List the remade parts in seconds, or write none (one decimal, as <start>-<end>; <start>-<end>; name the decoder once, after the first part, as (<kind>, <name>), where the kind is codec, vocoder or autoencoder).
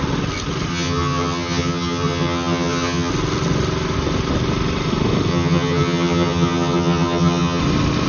0.7-3.1 (vocoder, HiFi-GAN); 5.3-7.6